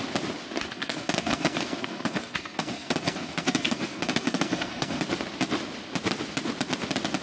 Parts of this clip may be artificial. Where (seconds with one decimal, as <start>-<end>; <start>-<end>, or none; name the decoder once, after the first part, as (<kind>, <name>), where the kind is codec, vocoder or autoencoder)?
0.7-5.0 (codec, SNAC)

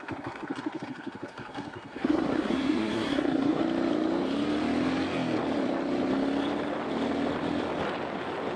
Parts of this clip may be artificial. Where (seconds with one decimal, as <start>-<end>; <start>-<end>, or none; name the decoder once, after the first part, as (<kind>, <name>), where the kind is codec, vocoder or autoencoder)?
0.0-3.6 (codec, SNAC)